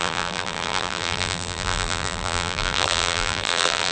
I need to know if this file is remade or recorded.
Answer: remade